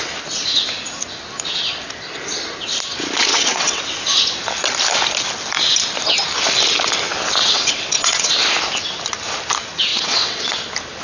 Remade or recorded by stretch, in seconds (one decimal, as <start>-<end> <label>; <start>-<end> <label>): 0.0-3.3 recorded; 3.3-3.9 remade; 3.9-7.4 recorded; 7.4-8.3 remade; 8.3-9.9 recorded; 9.9-10.6 remade; 10.6-11.0 recorded